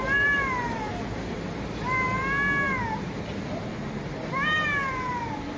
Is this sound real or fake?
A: real